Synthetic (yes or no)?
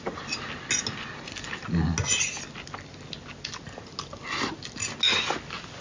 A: no